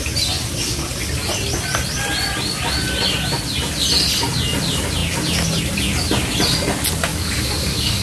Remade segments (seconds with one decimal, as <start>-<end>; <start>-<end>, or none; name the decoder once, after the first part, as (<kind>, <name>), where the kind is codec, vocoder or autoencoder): 7.1-8.0 (codec, DAC)